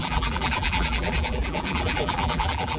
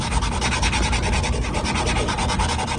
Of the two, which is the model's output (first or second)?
first